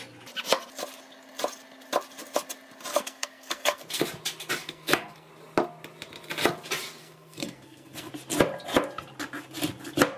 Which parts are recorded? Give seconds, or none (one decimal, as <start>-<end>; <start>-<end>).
0.0-2.9; 4.0-4.6; 5.3-7.0; 8.1-10.2